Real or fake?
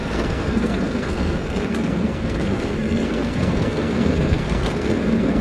fake